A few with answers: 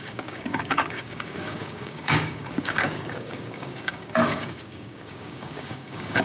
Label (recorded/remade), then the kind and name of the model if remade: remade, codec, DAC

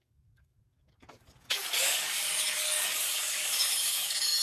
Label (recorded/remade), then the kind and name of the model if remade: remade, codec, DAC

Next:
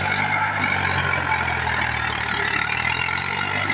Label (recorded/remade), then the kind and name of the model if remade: recorded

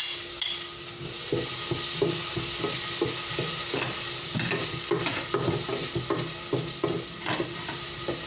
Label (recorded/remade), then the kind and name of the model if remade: recorded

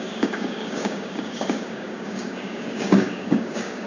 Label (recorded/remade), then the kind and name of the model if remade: remade, codec, DAC